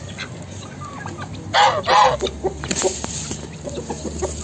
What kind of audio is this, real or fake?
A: real